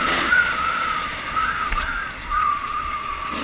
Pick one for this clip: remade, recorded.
remade